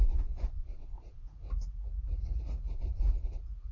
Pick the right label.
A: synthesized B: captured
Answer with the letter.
A